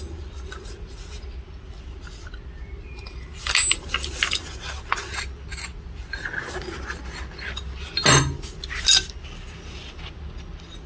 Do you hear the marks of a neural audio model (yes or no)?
no